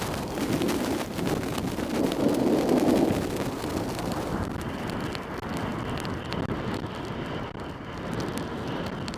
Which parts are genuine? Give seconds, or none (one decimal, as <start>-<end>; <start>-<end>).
0.0-9.2